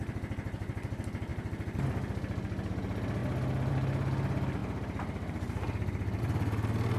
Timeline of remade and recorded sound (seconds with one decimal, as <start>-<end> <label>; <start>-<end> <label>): 0.0-4.6 recorded; 4.6-6.2 remade; 6.2-7.0 recorded